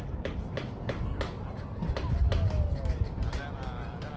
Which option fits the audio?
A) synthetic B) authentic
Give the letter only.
B